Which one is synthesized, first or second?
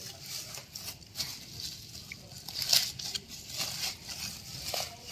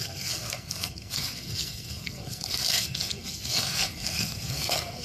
second